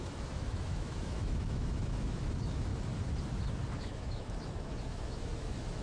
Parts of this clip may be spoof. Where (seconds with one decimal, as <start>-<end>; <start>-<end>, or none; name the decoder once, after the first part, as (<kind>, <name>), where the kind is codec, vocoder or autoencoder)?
0.0-2.7 (autoencoder, DAC-VAE); 3.8-5.8